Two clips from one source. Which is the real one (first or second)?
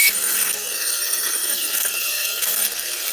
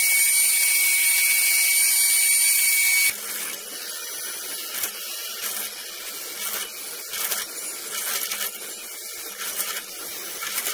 second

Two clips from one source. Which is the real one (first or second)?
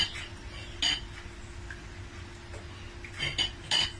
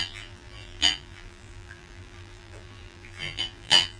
first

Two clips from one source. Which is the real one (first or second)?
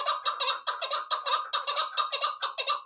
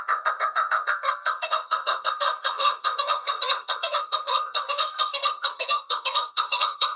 first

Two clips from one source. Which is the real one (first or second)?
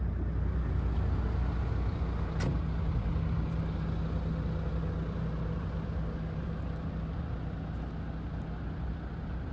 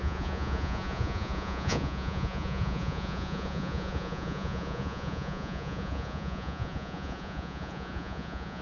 first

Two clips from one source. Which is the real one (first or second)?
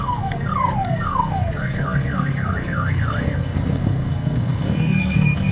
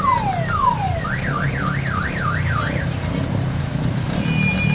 second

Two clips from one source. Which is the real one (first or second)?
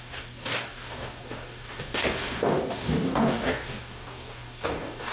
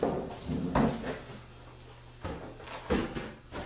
second